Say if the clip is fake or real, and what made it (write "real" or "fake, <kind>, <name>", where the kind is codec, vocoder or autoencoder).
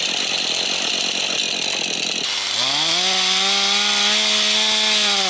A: real